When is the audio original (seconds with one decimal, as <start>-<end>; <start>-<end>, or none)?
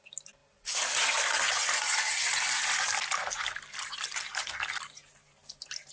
0.0-5.9